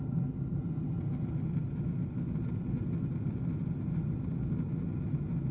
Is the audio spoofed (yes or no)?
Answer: no